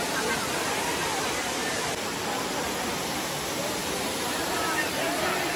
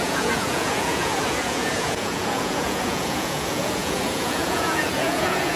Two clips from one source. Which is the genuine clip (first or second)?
first